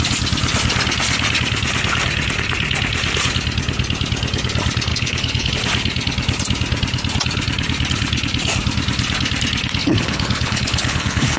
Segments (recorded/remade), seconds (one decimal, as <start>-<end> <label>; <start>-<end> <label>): 0.0-4.9 recorded; 4.9-5.5 remade; 5.5-9.8 recorded; 9.8-11.4 remade